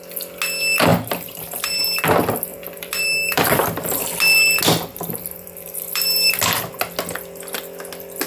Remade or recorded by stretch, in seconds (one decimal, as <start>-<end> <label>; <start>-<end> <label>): 0.0-0.9 recorded; 0.9-1.8 remade; 1.8-2.5 recorded; 2.5-4.0 remade; 4.0-4.9 recorded; 4.9-6.4 remade; 6.4-8.3 recorded